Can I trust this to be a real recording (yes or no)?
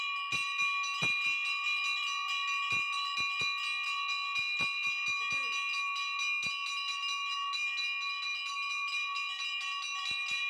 yes